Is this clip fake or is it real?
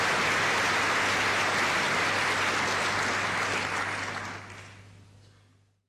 real